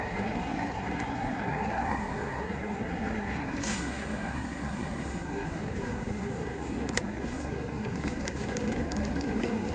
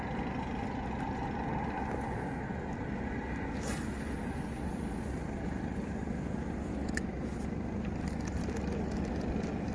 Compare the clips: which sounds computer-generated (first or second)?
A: first